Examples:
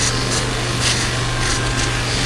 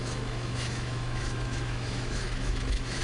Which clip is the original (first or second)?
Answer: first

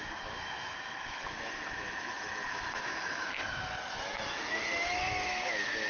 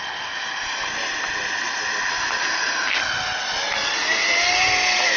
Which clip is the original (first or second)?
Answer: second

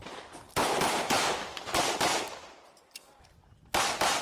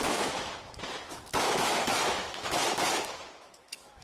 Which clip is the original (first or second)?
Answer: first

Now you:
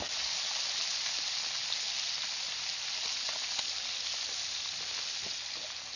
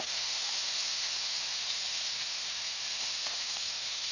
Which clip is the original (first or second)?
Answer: first